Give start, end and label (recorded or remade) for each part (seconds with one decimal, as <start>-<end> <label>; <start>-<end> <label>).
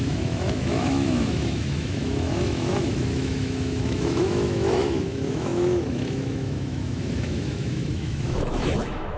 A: 0.0-9.2 remade